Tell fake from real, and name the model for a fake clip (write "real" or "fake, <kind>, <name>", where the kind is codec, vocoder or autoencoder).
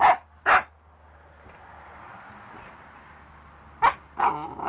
real